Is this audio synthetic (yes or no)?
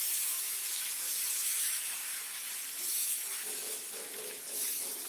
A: yes